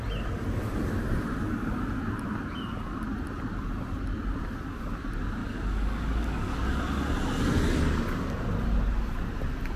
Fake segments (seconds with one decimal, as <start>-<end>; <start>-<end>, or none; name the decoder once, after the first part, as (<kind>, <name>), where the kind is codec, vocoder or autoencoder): 5.4-6.8 (codec, DAC)